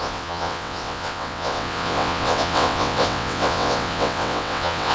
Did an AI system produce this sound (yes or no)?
yes